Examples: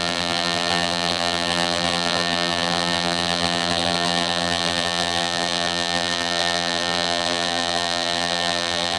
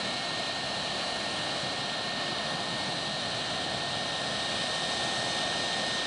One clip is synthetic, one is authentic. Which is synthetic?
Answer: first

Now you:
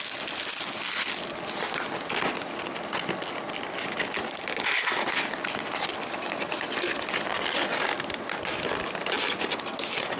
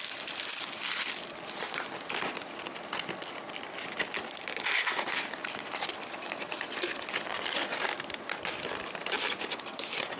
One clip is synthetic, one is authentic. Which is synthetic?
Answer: second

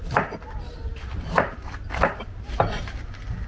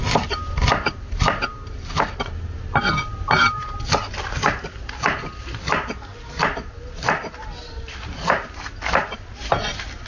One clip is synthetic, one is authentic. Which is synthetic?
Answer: first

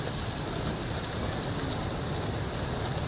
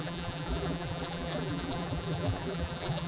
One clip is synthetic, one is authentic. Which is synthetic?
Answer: second